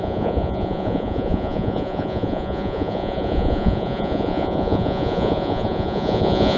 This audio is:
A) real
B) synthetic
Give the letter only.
B